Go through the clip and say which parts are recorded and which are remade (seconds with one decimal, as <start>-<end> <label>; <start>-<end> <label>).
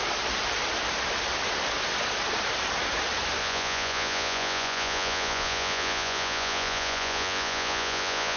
0.0-3.4 recorded; 3.4-8.4 remade